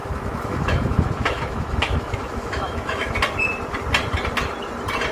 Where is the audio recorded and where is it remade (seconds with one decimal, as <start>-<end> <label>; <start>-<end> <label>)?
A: 0.0-3.1 remade; 3.1-5.1 recorded